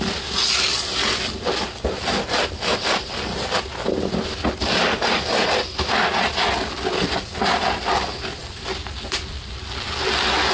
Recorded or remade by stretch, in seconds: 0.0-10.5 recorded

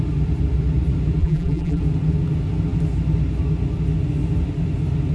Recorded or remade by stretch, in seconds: 0.0-1.2 recorded; 1.2-1.8 remade; 1.8-5.1 recorded